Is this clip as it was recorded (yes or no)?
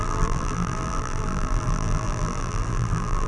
no